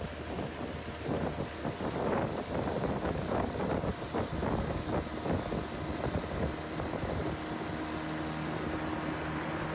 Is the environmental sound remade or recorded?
recorded